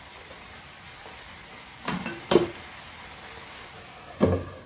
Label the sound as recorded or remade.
recorded